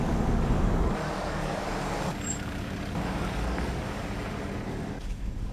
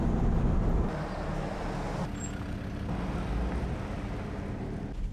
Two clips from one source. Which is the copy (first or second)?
first